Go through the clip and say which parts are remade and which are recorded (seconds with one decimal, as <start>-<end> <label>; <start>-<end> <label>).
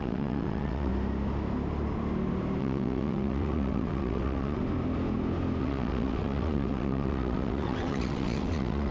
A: 0.0-0.9 remade; 0.9-2.6 recorded; 2.6-4.6 remade; 4.6-5.6 recorded; 5.6-8.9 remade